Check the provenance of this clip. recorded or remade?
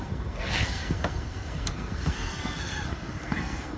remade